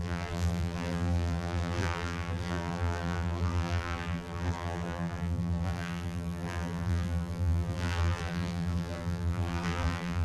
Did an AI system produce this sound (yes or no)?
yes